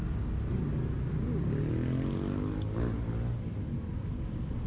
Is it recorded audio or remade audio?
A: recorded